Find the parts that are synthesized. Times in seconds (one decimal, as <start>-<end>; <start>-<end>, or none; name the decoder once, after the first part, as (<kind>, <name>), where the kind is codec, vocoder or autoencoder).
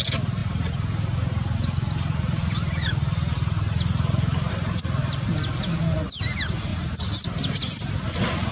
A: none